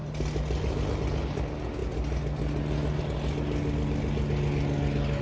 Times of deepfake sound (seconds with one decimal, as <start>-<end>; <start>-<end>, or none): none